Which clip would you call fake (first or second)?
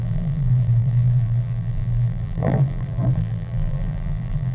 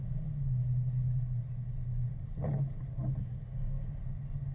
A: first